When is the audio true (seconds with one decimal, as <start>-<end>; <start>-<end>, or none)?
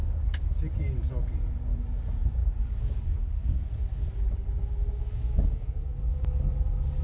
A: 0.5-2.4; 4.1-5.0; 6.5-7.0